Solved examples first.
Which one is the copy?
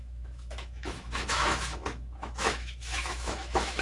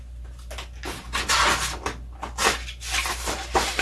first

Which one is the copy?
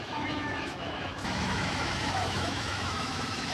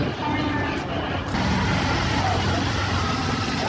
first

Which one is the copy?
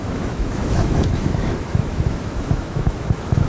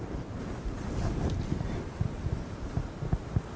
first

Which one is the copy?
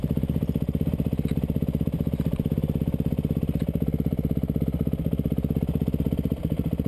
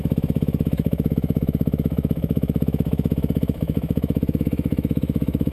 second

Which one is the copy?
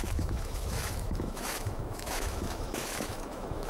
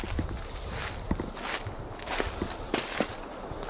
first